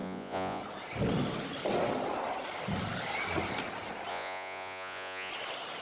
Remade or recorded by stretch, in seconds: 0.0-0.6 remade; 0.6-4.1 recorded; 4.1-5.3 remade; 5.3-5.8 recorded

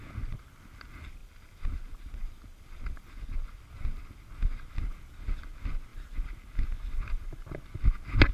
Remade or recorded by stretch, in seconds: 0.0-1.2 recorded; 1.2-4.7 remade; 4.7-8.3 recorded

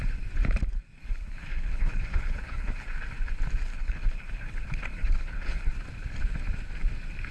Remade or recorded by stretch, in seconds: 0.0-1.0 recorded; 1.0-2.9 remade; 2.9-3.7 recorded; 3.7-5.7 remade; 5.7-7.3 recorded

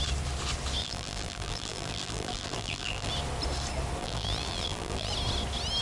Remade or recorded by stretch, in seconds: 0.0-0.8 recorded; 0.8-3.1 remade; 3.1-4.0 recorded; 4.0-5.1 remade; 5.1-5.8 recorded

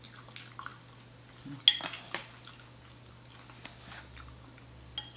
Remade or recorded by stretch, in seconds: 0.0-5.2 recorded

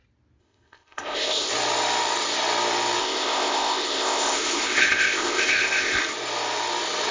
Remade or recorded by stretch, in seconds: 0.0-0.4 recorded; 0.4-1.5 remade; 1.5-3.0 recorded; 3.0-6.0 remade; 6.0-7.1 recorded

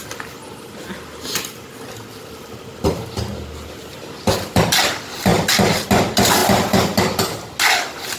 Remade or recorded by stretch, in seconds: 0.0-8.2 recorded

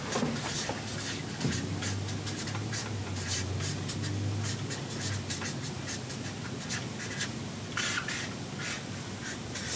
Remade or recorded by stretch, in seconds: 0.0-9.8 recorded